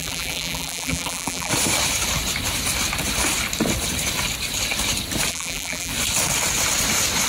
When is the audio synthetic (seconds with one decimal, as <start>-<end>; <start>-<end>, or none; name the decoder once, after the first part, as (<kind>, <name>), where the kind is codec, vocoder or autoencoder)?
0.0-1.5 (vocoder, BigVGAN v2); 5.3-5.9